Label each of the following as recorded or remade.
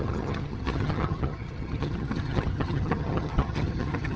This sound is remade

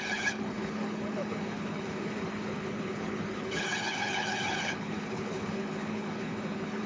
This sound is remade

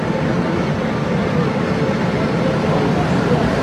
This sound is recorded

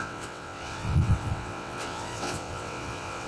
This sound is remade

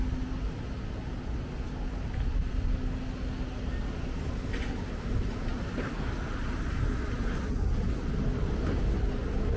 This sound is recorded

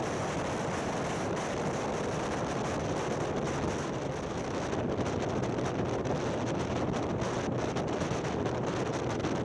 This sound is recorded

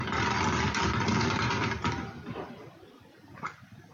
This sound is recorded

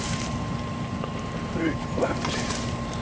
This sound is remade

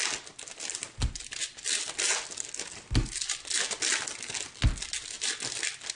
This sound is recorded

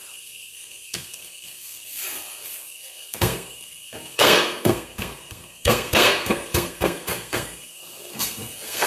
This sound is remade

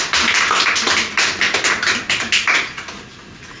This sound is recorded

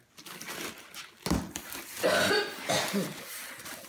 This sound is recorded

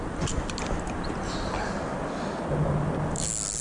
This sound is recorded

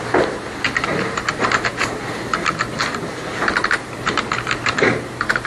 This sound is remade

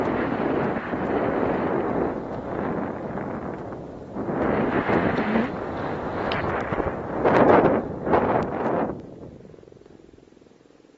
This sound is recorded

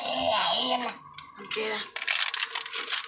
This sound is recorded